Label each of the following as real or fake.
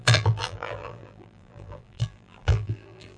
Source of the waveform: fake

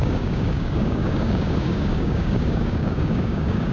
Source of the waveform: fake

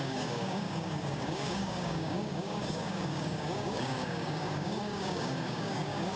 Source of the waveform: fake